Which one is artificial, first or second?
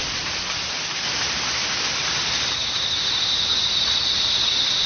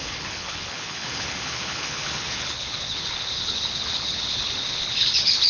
second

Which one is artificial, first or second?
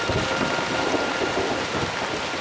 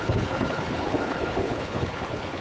second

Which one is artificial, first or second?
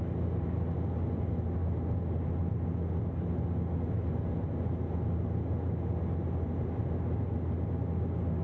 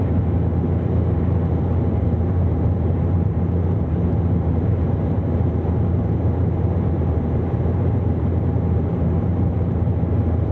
second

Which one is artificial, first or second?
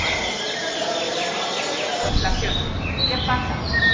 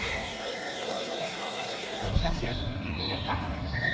second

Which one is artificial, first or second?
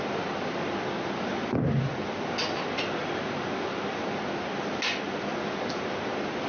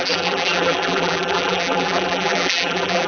second